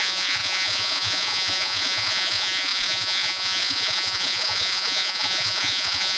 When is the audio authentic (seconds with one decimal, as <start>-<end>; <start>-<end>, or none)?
none